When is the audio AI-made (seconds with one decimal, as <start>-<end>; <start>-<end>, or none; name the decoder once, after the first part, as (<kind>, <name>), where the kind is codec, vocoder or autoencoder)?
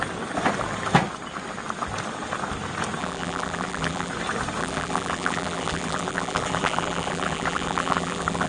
3.0-4.1 (vocoder, BigVGAN v2); 4.6-8.5